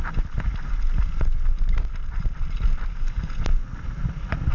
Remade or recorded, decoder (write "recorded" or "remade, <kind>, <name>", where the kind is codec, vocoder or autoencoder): recorded